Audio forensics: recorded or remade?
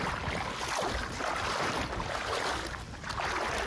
recorded